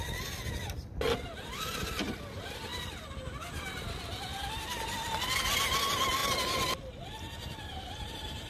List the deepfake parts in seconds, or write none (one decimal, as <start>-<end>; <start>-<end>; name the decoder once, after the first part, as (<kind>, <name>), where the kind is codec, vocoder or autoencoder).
7.7-8.5 (vocoder, BigVGAN v2)